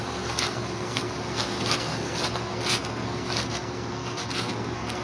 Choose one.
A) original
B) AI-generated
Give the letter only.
B